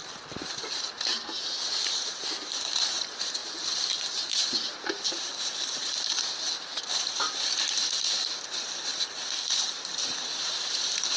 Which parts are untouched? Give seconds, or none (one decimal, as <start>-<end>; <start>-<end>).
0.0-0.5; 8.9-9.4

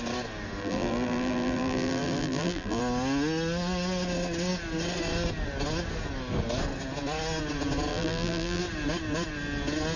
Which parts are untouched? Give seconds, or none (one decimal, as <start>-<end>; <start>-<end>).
0.0-0.6; 2.8-7.9; 8.6-10.0

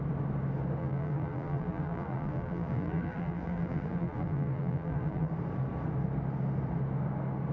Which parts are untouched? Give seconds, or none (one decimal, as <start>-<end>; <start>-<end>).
0.0-0.8; 5.3-7.5

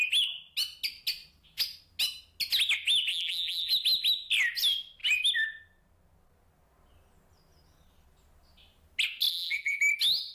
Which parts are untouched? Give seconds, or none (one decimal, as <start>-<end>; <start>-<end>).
0.0-3.1; 3.7-9.3; 9.8-10.3

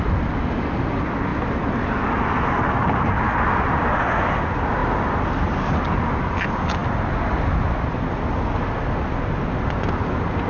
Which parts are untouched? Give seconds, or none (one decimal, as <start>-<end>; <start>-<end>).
0.0-10.5